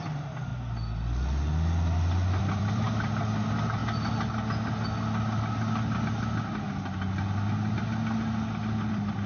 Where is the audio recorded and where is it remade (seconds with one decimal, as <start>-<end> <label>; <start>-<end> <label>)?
0.0-0.5 remade; 0.5-2.4 recorded; 2.4-3.8 remade; 3.8-8.9 recorded; 8.9-9.3 remade